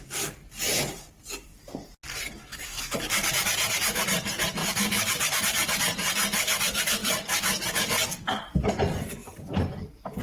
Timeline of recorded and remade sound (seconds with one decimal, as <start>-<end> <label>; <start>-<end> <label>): 0.0-2.5 recorded; 2.5-3.3 remade; 3.3-4.6 recorded; 4.6-5.4 remade; 5.4-10.2 recorded